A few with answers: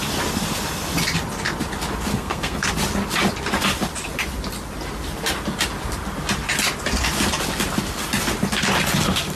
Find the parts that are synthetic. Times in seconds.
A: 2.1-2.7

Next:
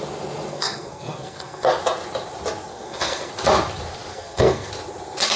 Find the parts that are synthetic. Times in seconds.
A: 0.5-1.7; 2.7-3.3; 4.1-4.7

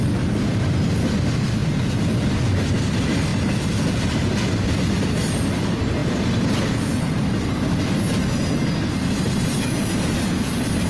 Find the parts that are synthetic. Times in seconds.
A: none

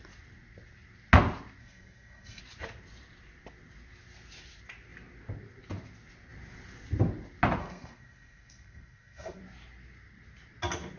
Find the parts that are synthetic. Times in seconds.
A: 1.6-2.4; 7.6-9.4